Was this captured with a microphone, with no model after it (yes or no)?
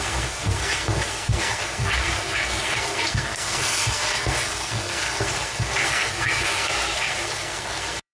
no